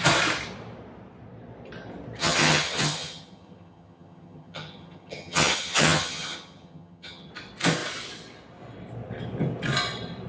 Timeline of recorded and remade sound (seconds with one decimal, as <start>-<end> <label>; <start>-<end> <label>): 0.0-2.2 recorded; 2.2-7.3 remade; 7.3-10.3 recorded

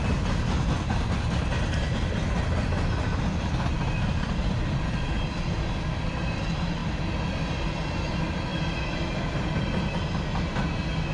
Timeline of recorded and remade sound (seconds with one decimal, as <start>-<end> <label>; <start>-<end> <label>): 0.0-11.1 recorded